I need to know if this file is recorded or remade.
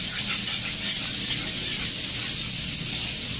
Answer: recorded